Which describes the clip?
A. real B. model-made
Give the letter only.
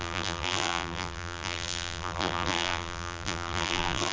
B